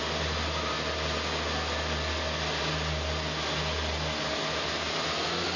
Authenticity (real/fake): real